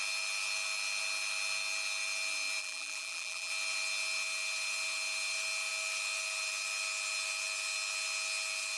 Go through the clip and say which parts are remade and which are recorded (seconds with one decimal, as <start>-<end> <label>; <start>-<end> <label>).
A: 0.0-2.6 recorded; 2.6-3.5 remade; 3.5-8.8 recorded